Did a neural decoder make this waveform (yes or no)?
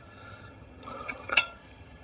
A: yes